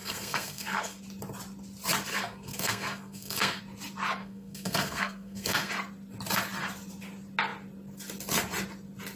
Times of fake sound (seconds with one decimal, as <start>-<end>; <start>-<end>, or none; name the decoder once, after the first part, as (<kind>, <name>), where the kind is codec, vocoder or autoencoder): 0.0-1.0 (codec, SNAC); 2.1-3.6; 4.2-5.7